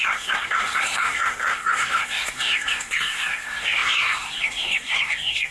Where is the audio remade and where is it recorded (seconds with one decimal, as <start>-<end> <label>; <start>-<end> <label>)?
0.0-5.5 remade